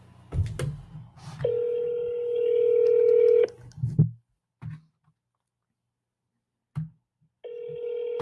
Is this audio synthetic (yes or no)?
no